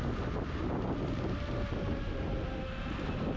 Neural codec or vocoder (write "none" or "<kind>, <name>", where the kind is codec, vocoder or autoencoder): none